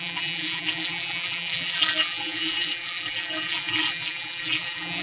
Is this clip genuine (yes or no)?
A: no